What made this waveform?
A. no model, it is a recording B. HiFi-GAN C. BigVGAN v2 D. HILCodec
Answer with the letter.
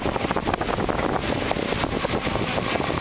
A